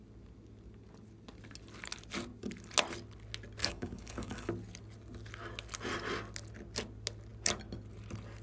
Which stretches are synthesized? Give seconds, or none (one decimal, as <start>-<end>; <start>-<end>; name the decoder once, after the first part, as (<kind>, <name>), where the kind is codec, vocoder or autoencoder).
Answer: 3.6-4.5 (codec, DAC)